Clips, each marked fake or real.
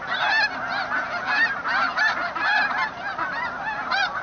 real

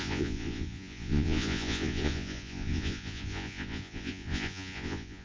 fake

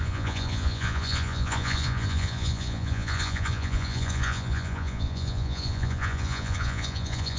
fake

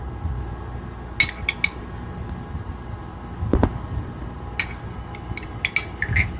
real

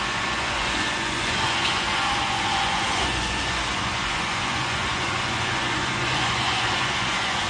fake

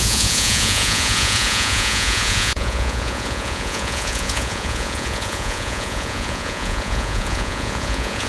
fake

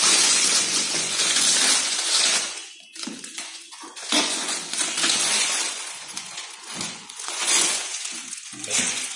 fake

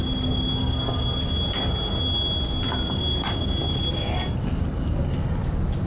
real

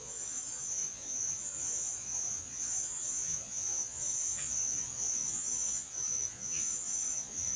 fake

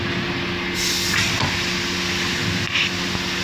real